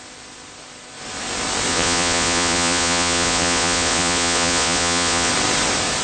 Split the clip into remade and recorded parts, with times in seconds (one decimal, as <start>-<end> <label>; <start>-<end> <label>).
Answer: 0.0-1.7 recorded; 1.7-5.3 remade; 5.3-6.0 recorded